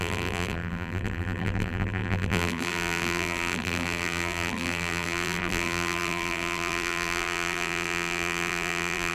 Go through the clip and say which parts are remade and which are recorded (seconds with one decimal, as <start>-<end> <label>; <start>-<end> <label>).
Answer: 0.0-9.1 remade